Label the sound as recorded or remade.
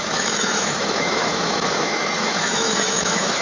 remade